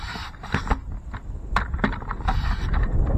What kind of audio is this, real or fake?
real